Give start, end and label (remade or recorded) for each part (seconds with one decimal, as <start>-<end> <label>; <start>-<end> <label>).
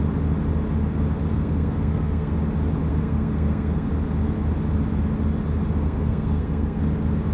0.0-1.3 recorded; 1.3-2.3 remade; 2.3-2.9 recorded; 2.9-3.9 remade; 3.9-5.8 recorded; 5.8-6.8 remade; 6.8-7.3 recorded